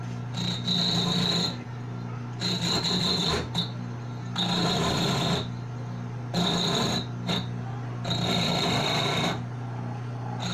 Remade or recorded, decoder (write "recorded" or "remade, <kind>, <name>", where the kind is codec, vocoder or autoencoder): recorded